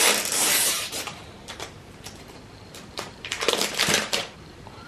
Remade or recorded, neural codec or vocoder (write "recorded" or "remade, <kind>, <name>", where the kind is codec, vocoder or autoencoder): remade, vocoder, BigVGAN v2